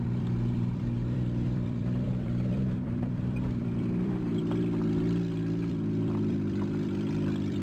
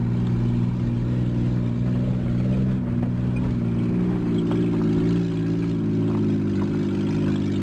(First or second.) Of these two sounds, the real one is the second